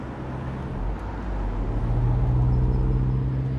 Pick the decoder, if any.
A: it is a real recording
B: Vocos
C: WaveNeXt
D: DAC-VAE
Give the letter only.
A